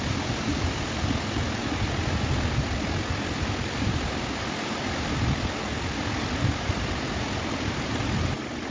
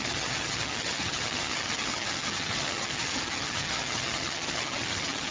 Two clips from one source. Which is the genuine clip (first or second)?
first